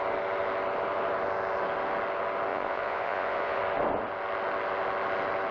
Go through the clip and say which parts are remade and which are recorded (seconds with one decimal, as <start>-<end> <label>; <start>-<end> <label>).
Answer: 0.0-2.5 recorded; 2.5-3.6 remade; 3.6-5.5 recorded